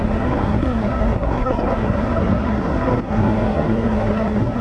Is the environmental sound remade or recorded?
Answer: remade